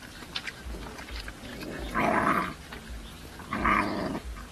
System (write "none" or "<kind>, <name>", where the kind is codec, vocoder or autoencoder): none